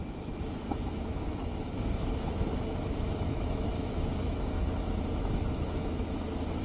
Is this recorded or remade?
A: remade